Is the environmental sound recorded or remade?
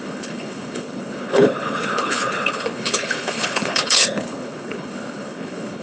remade